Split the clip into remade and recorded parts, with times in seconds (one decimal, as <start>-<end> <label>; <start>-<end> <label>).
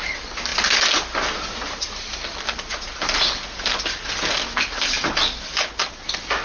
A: 0.0-6.4 recorded